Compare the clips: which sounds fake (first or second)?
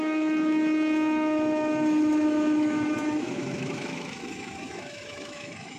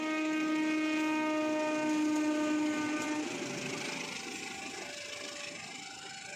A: first